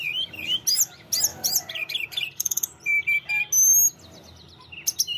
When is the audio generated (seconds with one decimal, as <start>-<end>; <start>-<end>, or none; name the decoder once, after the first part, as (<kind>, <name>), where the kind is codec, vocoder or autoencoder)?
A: 1.3-3.4 (vocoder, BigVGAN v2)